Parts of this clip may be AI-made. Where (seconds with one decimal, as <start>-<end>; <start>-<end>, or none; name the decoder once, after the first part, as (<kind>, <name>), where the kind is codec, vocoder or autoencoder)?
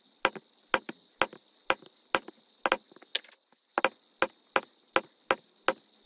none